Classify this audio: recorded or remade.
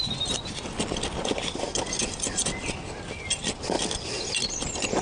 recorded